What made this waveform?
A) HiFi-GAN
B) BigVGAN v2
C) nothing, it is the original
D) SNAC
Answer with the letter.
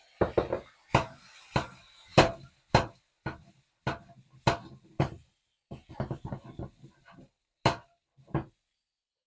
C